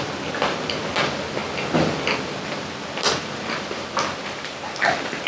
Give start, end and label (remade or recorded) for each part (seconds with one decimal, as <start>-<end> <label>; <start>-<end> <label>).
0.0-5.3 recorded